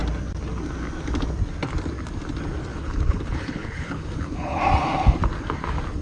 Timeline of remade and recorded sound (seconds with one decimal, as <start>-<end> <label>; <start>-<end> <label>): 0.0-2.7 recorded; 2.7-4.6 remade; 4.6-6.0 recorded